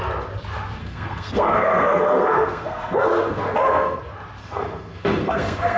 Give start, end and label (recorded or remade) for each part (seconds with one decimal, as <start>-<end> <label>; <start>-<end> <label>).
0.0-0.8 recorded; 0.8-4.0 remade; 4.0-4.4 recorded; 4.4-5.8 remade